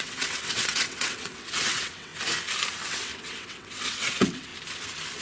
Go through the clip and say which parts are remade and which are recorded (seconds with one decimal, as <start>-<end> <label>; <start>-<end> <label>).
0.0-2.1 remade; 2.1-2.9 recorded; 2.9-4.5 remade; 4.5-5.2 recorded